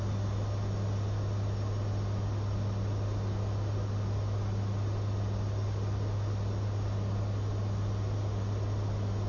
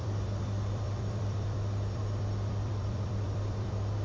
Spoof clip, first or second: second